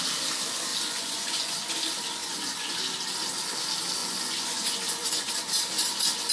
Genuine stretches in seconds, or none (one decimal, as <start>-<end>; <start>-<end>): 0.0-0.7; 1.7-2.2; 2.8-4.0; 5.3-6.3